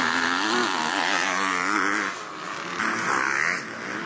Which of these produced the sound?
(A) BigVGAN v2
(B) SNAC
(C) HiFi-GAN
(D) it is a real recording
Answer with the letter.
D